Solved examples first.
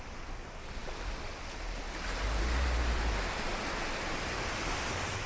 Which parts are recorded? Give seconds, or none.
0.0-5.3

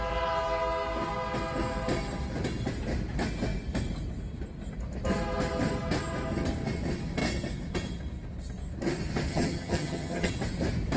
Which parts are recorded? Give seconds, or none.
0.0-9.3; 10.3-11.0

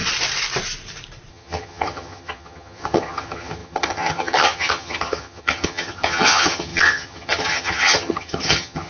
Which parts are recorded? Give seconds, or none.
0.0-1.3

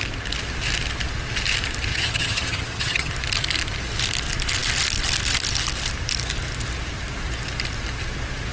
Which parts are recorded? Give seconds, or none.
0.0-1.9; 3.1-8.5

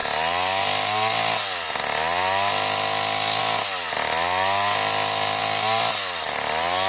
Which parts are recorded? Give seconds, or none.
0.0-6.9

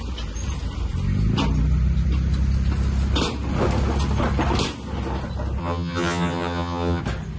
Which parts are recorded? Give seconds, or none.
0.0-5.6; 7.0-7.4

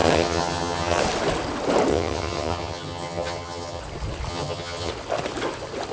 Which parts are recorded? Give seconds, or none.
1.0-1.9; 3.8-4.3; 4.9-5.9

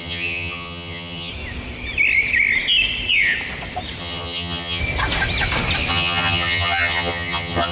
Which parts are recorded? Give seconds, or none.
1.3-4.0; 4.8-5.9